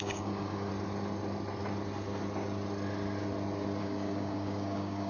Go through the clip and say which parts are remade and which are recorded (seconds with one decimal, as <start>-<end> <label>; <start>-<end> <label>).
0.0-0.7 remade; 0.7-3.8 recorded; 3.8-5.1 remade